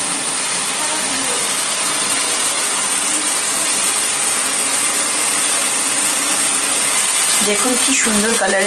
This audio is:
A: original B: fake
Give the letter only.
A